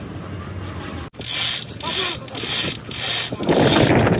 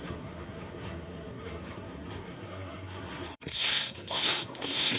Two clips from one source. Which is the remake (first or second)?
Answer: second